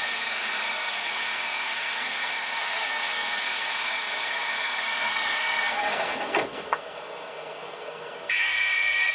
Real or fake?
fake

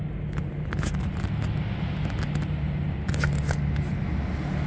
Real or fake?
real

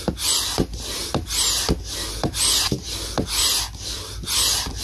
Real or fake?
real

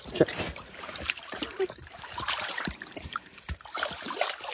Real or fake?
fake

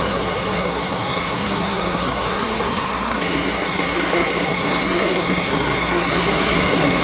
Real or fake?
fake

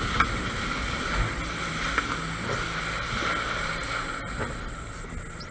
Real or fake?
real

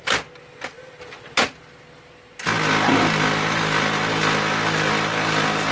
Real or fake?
real